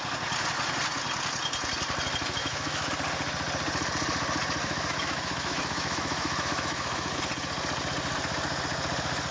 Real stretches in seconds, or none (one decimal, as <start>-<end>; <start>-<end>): 0.0-2.4; 2.9-4.6; 7.2-9.3